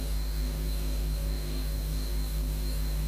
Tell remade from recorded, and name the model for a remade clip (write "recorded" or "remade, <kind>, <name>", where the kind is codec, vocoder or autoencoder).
remade, codec, DAC